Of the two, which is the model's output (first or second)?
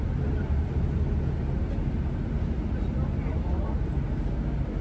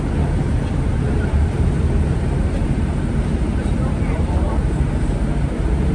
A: second